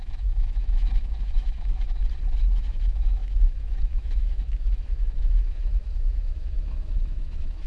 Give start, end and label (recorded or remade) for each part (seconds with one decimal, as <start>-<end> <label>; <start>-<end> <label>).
0.0-2.0 remade; 2.0-2.7 recorded; 2.7-7.7 remade